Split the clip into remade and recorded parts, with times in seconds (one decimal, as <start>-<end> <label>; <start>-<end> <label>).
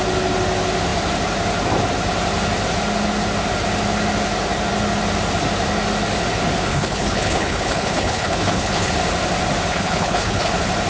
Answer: 0.0-6.7 recorded; 6.7-8.9 remade; 8.9-9.7 recorded; 9.7-10.5 remade; 10.5-10.9 recorded